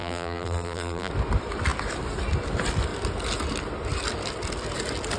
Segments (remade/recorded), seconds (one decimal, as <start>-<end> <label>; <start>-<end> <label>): 0.0-1.1 remade; 1.1-5.2 recorded